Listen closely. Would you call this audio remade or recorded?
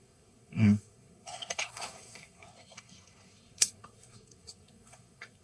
remade